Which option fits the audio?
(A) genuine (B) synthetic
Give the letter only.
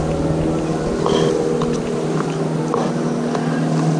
A